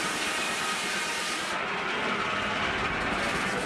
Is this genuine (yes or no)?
yes